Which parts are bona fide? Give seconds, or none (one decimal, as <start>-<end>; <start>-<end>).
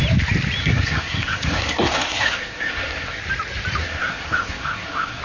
0.0-0.6; 3.2-3.8